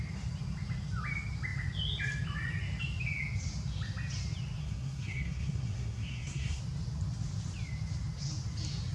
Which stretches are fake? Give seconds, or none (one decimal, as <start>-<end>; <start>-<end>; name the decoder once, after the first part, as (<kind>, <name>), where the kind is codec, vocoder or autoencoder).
4.6-6.6 (codec, SNAC)